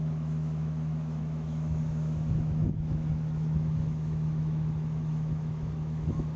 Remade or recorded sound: remade